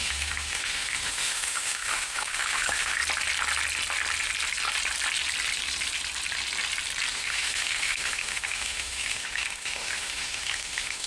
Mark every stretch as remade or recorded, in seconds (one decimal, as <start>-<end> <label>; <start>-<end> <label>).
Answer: 0.0-3.0 remade; 3.0-7.1 recorded; 7.1-11.1 remade